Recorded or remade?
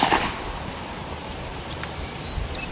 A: recorded